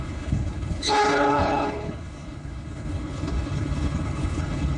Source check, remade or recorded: remade